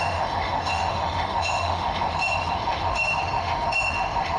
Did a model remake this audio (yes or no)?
yes